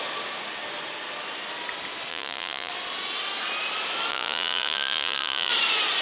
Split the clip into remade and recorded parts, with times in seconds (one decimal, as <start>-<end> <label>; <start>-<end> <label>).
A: 0.0-2.1 recorded; 2.1-2.7 remade; 2.7-4.1 recorded; 4.1-5.5 remade; 5.5-6.0 recorded